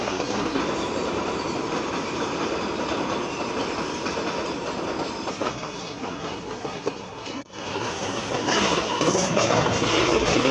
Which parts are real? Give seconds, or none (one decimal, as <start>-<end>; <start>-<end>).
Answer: 0.6-5.3